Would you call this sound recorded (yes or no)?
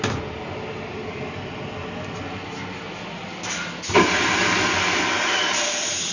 yes